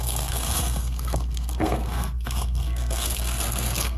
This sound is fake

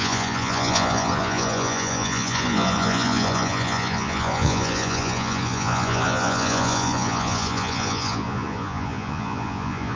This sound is fake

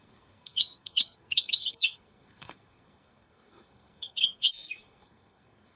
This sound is fake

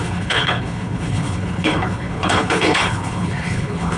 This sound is fake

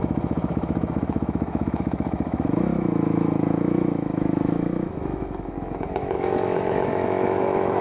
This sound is fake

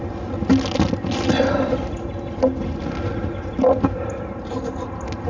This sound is real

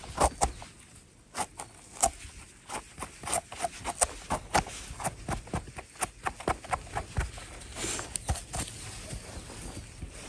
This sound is real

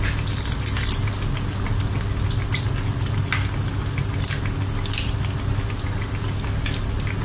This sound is real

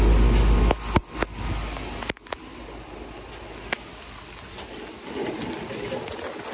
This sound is real